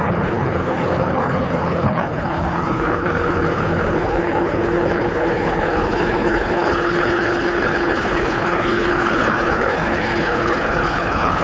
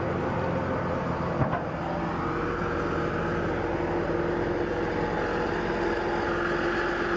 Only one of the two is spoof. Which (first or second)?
first